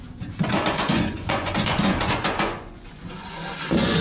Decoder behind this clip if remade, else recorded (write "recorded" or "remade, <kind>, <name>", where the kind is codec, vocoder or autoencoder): remade, vocoder, Vocos